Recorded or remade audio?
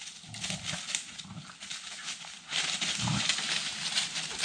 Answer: recorded